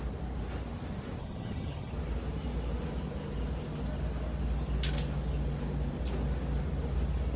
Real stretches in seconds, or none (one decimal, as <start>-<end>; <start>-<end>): 0.0-1.2; 1.9-7.4